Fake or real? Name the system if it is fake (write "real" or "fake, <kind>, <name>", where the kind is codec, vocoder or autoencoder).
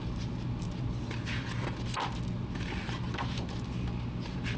real